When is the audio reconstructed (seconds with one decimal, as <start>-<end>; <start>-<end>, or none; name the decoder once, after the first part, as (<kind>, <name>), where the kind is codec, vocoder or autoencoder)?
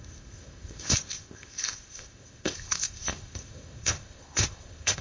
0.0-5.0 (codec, ZipCodec)